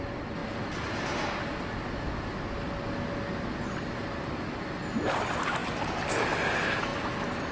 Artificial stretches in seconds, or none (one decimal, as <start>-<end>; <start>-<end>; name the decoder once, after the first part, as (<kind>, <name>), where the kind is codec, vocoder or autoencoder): none